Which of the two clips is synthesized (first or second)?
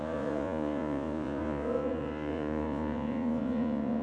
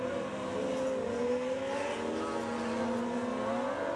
first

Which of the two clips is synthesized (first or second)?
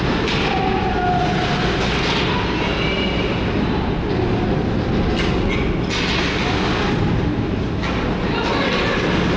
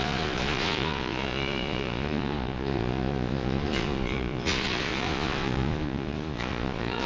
second